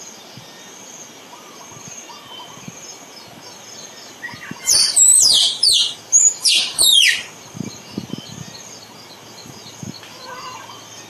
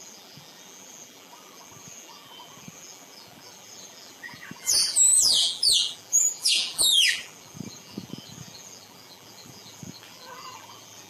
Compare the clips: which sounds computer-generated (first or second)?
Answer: second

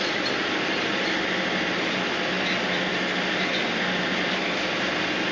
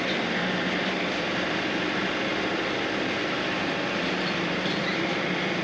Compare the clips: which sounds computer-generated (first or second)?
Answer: second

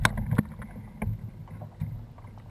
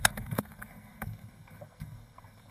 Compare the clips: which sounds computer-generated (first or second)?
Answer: second